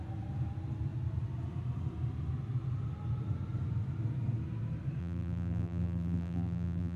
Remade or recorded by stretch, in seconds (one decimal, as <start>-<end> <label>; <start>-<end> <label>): 0.0-5.0 recorded; 5.0-7.0 remade